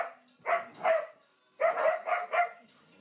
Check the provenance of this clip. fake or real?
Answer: real